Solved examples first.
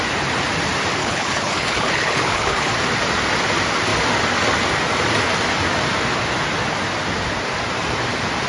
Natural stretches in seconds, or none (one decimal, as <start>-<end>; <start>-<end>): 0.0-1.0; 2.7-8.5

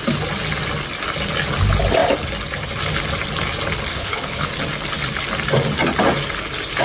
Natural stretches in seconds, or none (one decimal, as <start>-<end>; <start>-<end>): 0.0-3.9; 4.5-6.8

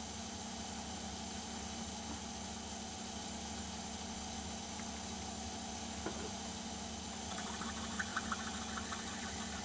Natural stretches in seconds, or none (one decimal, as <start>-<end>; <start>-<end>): 0.0-9.6